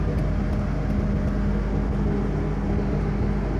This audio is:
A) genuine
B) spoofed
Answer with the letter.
A